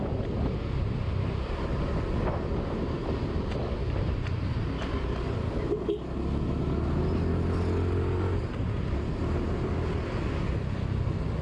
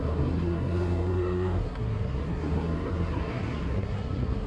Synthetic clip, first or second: second